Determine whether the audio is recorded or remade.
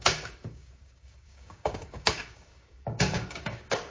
remade